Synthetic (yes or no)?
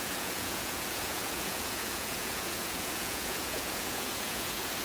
yes